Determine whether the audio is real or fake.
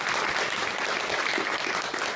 real